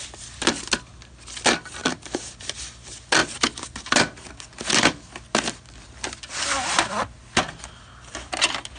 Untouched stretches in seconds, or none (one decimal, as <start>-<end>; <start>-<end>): 0.0-8.8